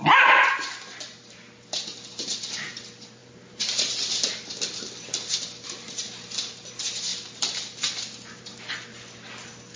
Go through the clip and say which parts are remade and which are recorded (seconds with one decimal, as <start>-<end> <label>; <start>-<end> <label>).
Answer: 0.0-3.2 recorded; 3.2-3.9 remade; 3.9-7.1 recorded; 7.1-7.8 remade; 7.8-9.8 recorded